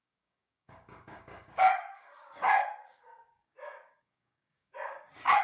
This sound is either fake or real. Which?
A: fake